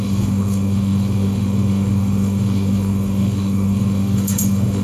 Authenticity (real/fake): fake